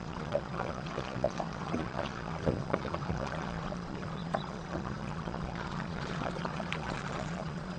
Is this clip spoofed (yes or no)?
yes